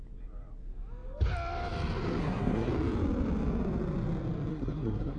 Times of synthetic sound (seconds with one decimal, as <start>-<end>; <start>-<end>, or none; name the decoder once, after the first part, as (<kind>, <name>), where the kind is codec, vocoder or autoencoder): 2.2-2.7 (codec, SNAC); 4.5-5.2